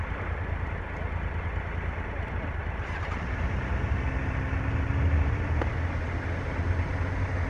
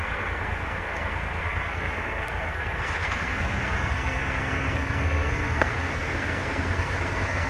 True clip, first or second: first